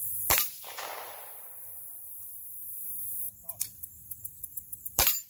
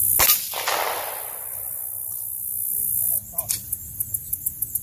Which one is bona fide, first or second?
second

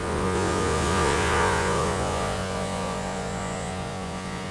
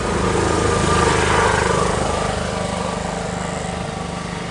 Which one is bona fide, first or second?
second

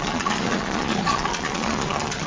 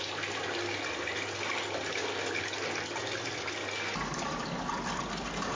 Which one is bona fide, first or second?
second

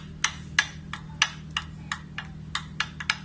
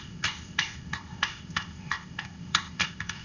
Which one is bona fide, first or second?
first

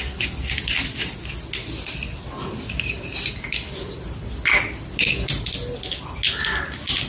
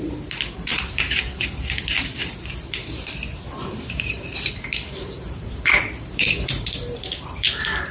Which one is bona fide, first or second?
first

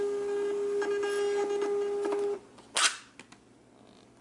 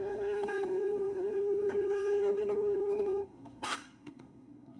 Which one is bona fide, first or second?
first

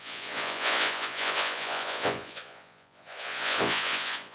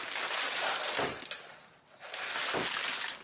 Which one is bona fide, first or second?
second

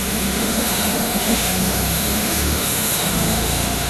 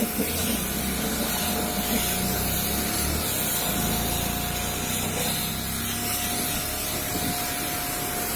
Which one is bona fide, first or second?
second